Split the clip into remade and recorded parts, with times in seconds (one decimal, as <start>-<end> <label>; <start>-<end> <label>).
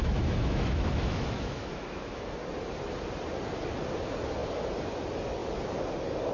0.0-2.2 remade; 2.2-6.3 recorded